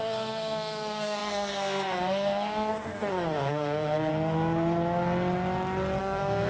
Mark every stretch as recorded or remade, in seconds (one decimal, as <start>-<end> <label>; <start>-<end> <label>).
0.0-4.1 remade; 4.1-6.0 recorded; 6.0-6.5 remade